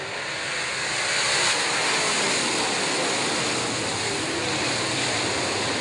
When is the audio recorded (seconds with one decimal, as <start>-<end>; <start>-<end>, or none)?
0.5-1.0; 1.8-4.6